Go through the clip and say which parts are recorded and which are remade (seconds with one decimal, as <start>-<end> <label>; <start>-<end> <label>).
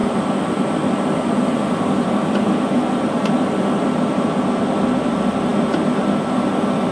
0.0-4.1 remade; 4.1-6.9 recorded